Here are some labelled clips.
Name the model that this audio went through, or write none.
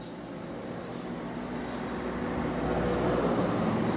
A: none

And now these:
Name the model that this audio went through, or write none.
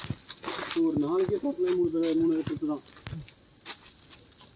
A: none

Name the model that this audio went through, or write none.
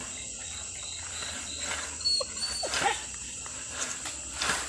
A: none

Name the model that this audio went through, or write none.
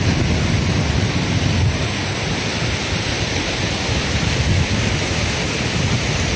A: none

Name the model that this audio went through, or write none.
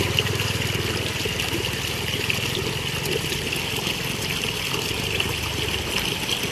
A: none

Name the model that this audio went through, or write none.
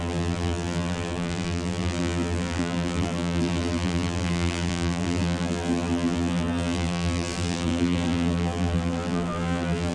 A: vocoder, BigVGAN v2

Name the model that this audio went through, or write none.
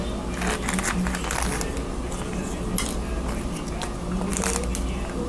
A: none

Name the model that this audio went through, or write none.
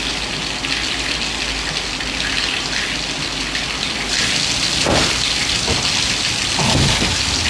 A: none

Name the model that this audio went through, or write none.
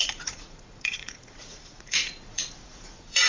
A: vocoder, Vocos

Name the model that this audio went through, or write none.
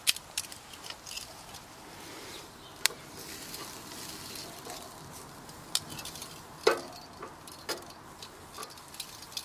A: none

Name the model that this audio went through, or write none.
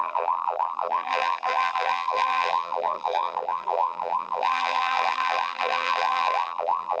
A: vocoder, BigVGAN v2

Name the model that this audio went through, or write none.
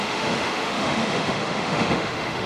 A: autoencoder, DAC-VAE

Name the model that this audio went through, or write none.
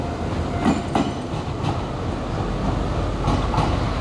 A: none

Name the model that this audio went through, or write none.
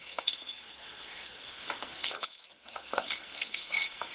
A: codec, SNAC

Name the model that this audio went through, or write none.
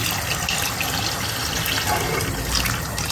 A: none